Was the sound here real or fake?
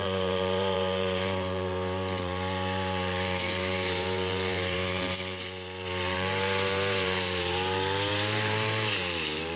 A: fake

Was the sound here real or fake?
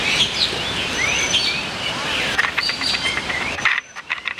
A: fake